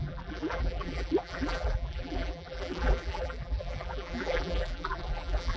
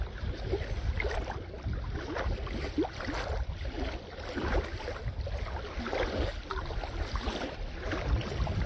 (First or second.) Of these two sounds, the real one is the second